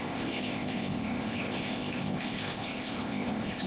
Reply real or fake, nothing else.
fake